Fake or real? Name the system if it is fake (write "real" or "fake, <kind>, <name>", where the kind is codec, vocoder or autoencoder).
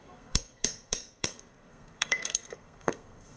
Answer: fake, codec, SNAC